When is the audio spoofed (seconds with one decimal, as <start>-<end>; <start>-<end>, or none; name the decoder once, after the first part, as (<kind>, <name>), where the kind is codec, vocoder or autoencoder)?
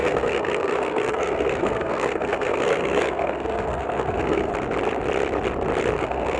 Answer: 0.0-4.5 (codec, SNAC); 6.0-6.4